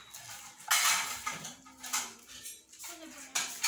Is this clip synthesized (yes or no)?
no